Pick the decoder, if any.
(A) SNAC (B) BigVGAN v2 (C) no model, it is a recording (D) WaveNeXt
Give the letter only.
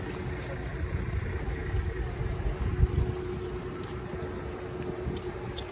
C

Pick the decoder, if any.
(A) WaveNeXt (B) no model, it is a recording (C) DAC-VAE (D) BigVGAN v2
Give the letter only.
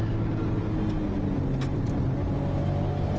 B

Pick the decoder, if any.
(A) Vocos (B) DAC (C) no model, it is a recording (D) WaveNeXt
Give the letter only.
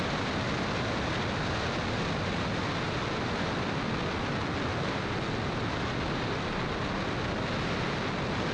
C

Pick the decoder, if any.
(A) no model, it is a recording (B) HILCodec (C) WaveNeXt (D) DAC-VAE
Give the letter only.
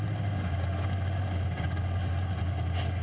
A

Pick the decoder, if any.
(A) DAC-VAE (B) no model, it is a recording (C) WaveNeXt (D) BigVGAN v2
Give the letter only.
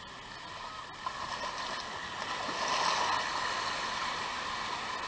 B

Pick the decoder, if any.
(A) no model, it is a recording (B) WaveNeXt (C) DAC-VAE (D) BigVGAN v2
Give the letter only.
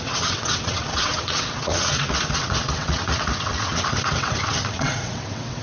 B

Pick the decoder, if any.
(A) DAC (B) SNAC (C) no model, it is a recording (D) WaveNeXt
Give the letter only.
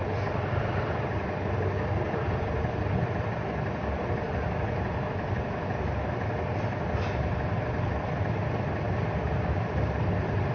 C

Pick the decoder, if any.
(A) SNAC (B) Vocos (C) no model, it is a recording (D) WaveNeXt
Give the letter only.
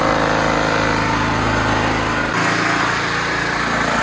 C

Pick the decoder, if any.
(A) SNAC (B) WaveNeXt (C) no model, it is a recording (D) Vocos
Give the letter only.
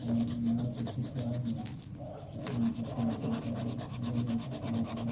C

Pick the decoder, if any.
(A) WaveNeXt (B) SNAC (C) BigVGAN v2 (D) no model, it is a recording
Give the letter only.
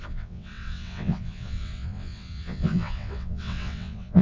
A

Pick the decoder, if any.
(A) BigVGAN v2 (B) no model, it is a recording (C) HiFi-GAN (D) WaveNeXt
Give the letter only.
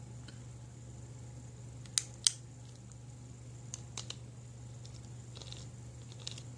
B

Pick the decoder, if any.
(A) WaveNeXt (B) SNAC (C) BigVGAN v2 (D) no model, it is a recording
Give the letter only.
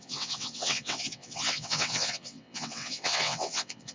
A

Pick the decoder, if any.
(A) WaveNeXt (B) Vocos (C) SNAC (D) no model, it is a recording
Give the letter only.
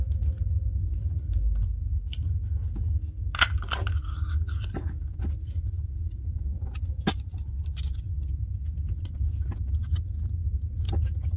D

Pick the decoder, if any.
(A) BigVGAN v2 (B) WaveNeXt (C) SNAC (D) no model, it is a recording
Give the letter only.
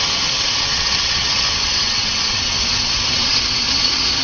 B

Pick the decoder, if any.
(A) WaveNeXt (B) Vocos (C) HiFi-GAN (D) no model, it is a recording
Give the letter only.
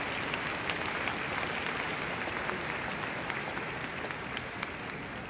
D